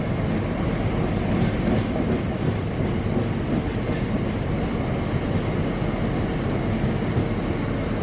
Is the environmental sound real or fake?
real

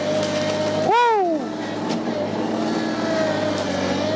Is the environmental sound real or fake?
real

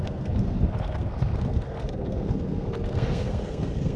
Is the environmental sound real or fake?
fake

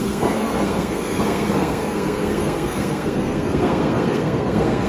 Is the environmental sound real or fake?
fake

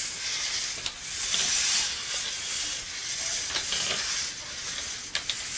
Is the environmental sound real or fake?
real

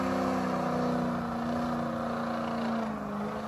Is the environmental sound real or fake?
real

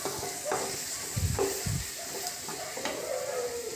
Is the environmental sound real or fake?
real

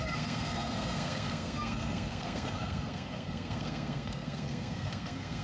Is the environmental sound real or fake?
fake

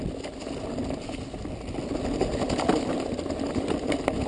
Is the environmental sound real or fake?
real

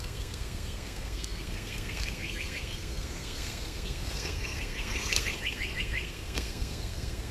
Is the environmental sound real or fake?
fake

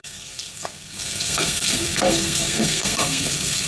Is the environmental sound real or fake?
fake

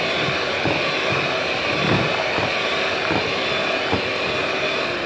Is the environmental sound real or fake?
real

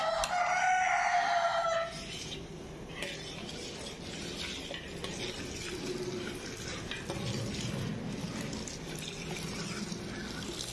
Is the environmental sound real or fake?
real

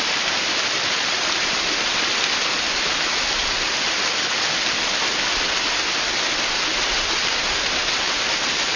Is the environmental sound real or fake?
real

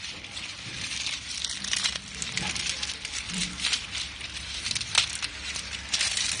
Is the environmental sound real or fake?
real